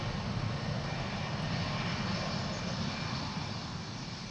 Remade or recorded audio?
recorded